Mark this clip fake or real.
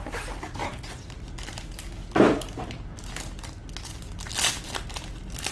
real